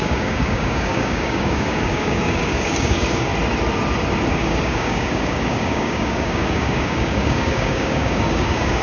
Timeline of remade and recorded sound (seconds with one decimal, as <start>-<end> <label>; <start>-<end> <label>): 0.0-3.3 remade; 3.3-4.3 recorded; 4.3-8.8 remade